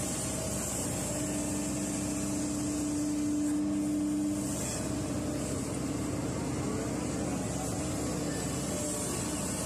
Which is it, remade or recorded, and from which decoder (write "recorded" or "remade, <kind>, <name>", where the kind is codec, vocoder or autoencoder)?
recorded